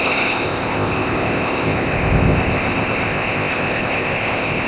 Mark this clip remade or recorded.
remade